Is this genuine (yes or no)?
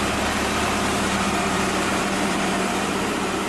no